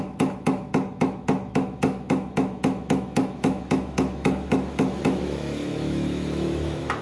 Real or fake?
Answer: fake